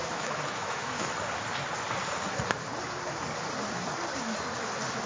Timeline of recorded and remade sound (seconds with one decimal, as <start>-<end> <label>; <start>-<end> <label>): 0.0-1.1 remade; 1.1-5.1 recorded